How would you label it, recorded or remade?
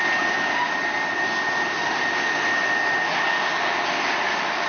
recorded